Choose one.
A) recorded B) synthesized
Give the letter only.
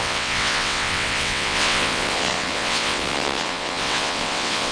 B